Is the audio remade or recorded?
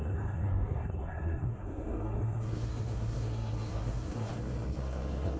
remade